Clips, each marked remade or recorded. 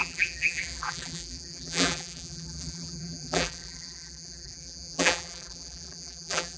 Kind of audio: remade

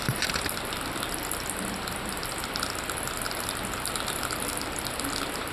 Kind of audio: remade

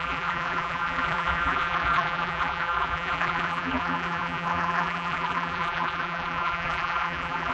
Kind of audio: remade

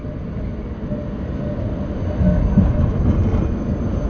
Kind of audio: recorded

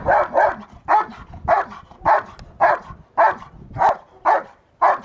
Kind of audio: recorded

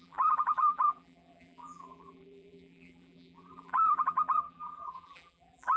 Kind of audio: remade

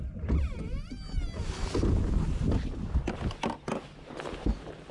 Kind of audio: recorded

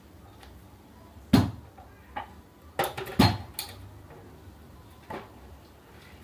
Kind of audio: recorded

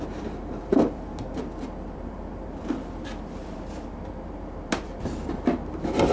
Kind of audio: remade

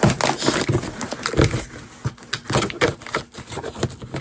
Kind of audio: recorded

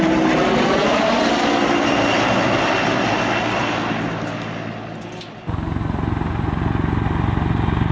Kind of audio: recorded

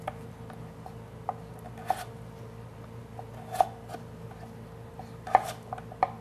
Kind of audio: recorded